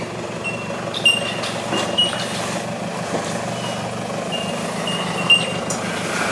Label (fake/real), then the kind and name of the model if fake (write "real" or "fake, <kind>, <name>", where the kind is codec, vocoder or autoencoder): real